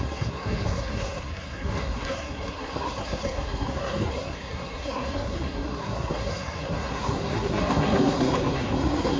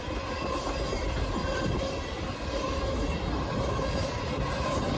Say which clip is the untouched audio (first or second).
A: second